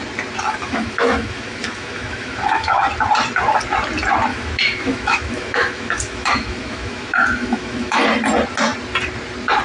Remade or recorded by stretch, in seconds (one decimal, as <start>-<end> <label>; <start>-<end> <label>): 0.0-0.6 recorded; 0.6-2.8 remade; 2.8-4.3 recorded; 4.3-8.0 remade; 8.0-9.6 recorded